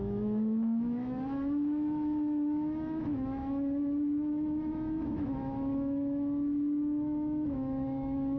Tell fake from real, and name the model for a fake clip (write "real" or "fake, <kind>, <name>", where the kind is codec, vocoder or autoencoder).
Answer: fake, autoencoder, DAC-VAE